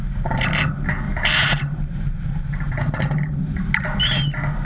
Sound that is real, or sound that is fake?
real